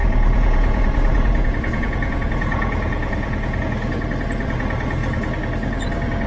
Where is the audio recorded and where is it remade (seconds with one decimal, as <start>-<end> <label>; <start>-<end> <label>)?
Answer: 0.0-3.6 remade; 3.6-6.3 recorded